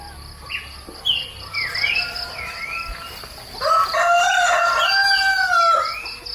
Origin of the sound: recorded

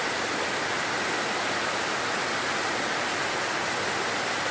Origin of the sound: recorded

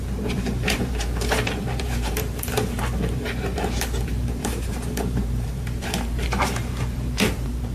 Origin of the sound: remade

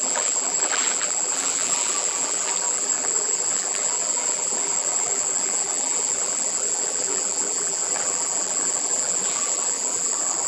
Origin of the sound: remade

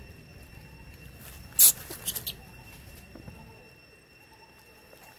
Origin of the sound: recorded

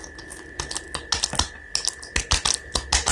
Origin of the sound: recorded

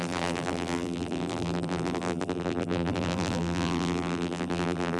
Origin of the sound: remade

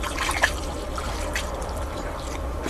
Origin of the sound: remade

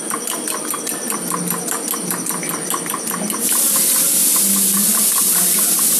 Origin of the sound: recorded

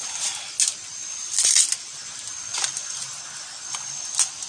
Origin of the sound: recorded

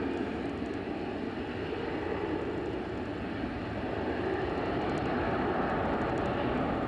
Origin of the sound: recorded